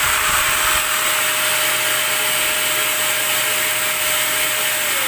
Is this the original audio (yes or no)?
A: yes